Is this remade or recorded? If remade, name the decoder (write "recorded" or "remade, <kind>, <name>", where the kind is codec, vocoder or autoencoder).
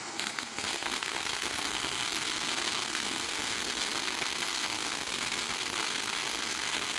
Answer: remade, codec, SNAC